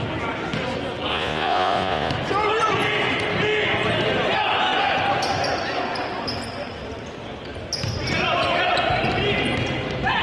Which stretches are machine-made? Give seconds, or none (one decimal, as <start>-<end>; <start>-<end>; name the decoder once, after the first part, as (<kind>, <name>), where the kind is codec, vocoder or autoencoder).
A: 1.1-2.1 (vocoder, Vocos)